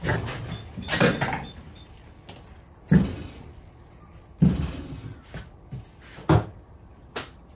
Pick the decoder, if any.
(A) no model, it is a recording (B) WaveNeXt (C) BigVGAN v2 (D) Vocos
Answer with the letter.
A